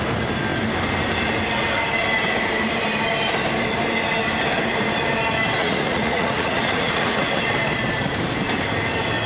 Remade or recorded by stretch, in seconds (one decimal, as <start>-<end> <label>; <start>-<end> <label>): 0.0-5.6 recorded; 5.6-7.3 remade; 7.3-9.3 recorded